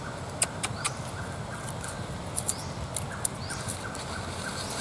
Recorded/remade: recorded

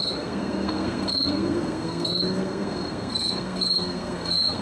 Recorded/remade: remade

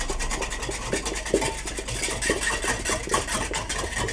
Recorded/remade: recorded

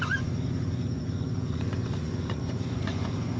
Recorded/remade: remade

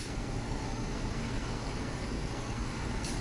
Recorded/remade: remade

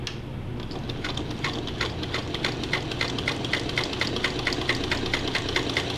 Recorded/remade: recorded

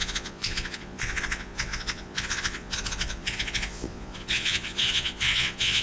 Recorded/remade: remade